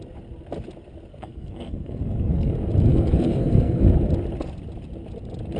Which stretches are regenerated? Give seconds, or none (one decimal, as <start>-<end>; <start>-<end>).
1.1-2.5; 2.9-3.8